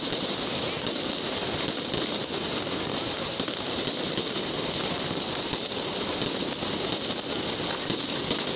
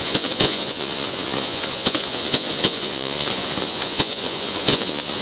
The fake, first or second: second